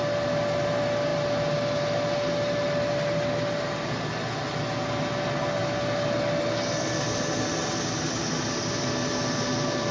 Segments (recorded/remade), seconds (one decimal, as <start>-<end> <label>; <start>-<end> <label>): 0.0-9.9 recorded